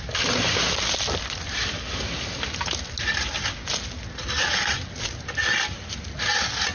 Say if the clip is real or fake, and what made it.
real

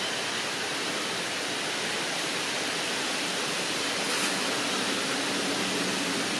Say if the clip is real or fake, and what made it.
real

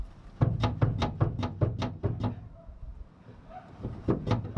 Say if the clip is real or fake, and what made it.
real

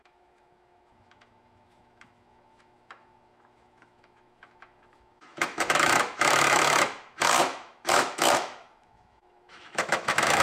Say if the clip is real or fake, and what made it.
fake, autoencoder, DAC-VAE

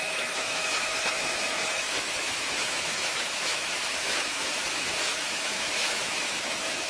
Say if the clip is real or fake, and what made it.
fake, autoencoder, DAC-VAE